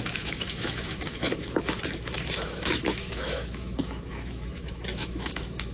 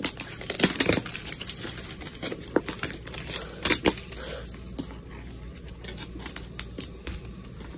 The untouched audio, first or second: second